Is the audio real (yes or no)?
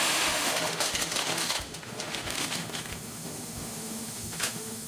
no